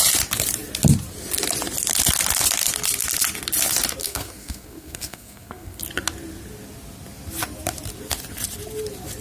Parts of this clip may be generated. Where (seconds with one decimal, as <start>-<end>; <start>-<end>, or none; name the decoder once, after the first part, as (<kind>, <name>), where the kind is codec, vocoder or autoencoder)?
4.0-5.8 (codec, SNAC)